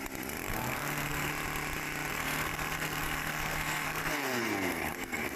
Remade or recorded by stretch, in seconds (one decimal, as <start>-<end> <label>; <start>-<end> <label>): 0.0-0.5 recorded; 0.5-1.3 remade; 1.3-2.1 recorded; 2.1-5.4 remade

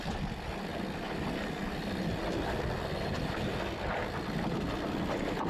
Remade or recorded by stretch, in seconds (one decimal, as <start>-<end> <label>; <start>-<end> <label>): 0.0-5.5 recorded

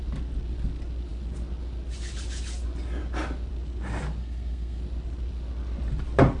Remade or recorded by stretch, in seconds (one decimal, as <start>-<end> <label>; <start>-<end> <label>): 0.0-4.2 recorded; 4.2-4.8 remade; 4.8-6.4 recorded

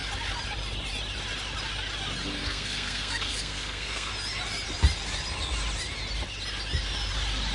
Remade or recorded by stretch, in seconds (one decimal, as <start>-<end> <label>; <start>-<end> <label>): 0.0-2.4 recorded; 2.4-4.1 remade; 4.1-7.5 recorded